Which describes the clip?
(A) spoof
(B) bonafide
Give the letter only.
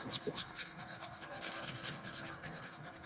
A